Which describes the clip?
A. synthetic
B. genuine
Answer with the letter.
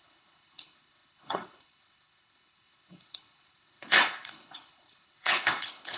A